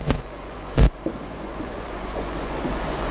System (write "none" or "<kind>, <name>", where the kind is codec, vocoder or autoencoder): vocoder, Vocos